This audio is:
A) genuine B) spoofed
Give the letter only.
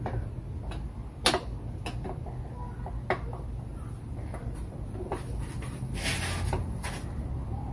A